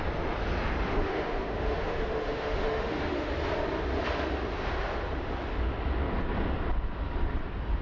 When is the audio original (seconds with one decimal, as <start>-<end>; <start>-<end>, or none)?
0.0-0.9; 3.3-7.8

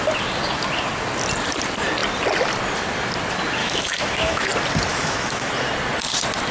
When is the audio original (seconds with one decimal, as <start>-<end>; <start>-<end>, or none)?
0.0-3.6; 4.5-4.9; 5.5-6.5

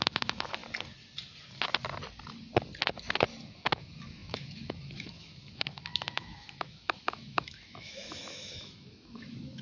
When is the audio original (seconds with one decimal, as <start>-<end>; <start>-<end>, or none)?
0.6-3.5

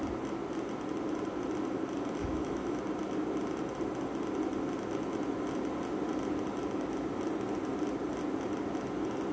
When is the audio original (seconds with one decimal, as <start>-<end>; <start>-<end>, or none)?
0.0-2.2; 2.8-9.3

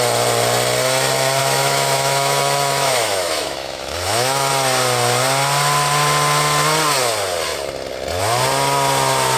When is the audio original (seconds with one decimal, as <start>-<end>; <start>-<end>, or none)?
0.0-1.4; 4.5-9.4